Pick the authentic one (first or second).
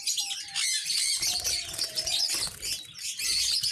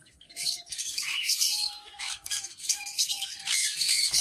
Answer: first